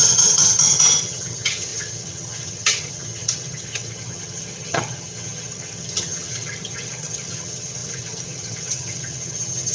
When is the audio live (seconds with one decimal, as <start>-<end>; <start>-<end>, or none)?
none